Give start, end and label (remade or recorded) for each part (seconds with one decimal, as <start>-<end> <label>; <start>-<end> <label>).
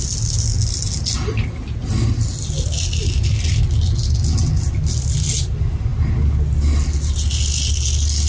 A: 0.0-8.3 recorded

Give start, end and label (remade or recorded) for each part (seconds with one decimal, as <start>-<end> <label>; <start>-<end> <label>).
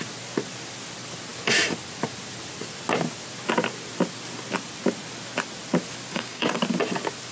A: 0.0-6.1 recorded; 6.1-6.6 remade; 6.6-7.3 recorded